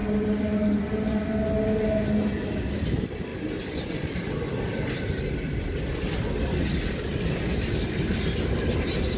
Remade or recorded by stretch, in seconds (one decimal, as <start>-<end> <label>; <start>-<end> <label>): 0.0-9.2 recorded